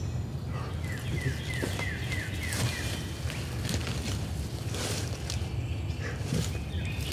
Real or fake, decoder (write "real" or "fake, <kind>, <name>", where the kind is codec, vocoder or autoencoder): real